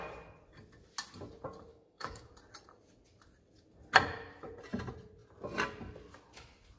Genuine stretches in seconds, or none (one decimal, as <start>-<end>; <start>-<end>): 0.0-1.7; 2.3-6.8